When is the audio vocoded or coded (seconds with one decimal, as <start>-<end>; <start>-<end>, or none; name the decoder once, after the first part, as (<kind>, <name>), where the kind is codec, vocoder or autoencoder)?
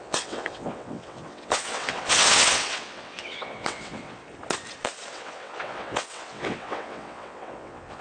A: 0.0-4.2 (vocoder, WaveNeXt); 5.1-8.0